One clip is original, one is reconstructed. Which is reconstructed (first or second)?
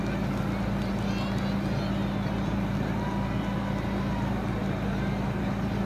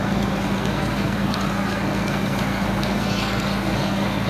second